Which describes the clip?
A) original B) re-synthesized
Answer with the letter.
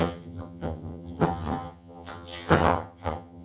B